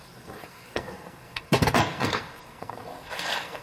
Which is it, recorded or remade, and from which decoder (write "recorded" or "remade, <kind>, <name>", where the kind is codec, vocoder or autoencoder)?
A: remade, codec, SNAC